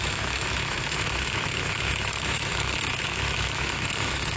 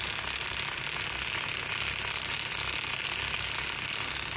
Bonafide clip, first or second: second